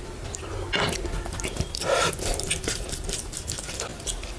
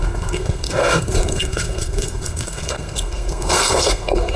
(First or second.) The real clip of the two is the first